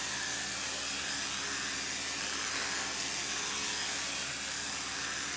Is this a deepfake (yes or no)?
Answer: no